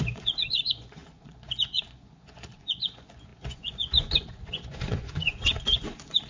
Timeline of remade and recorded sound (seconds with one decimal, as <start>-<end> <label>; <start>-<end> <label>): 0.0-6.3 remade